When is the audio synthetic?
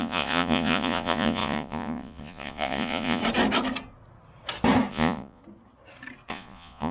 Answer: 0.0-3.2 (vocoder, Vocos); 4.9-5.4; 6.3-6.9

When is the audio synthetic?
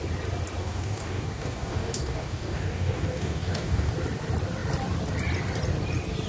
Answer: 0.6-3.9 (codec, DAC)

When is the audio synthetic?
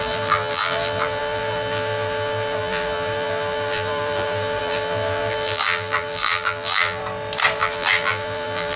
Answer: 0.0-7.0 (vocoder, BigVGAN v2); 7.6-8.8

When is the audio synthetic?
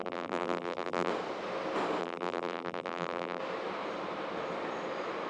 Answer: 0.0-1.1 (vocoder, BigVGAN v2); 2.0-3.4